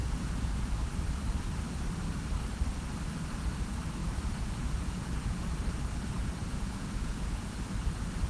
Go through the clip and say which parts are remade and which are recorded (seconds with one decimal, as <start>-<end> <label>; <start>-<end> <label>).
0.0-0.9 remade; 0.9-4.0 recorded; 4.0-5.5 remade; 5.5-6.4 recorded; 6.4-7.4 remade; 7.4-8.3 recorded